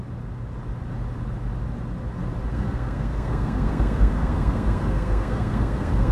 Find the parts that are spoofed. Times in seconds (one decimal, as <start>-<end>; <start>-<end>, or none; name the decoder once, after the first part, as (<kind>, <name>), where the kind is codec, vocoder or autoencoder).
2.5-6.1 (codec, SNAC)